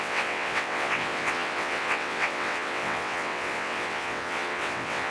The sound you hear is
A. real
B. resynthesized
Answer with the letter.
B